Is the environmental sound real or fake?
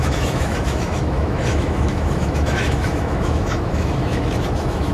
fake